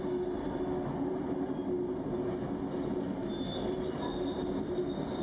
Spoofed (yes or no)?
no